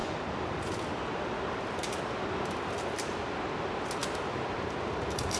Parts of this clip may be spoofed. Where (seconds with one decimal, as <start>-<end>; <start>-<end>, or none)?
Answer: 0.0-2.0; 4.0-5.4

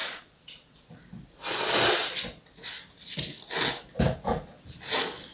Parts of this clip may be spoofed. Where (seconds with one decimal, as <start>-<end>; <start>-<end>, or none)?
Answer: 0.0-1.0

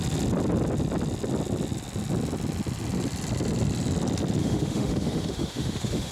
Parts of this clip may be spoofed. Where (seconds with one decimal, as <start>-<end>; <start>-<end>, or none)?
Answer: 4.4-6.1